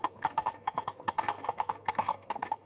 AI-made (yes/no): yes